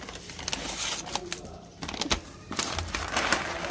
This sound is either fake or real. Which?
real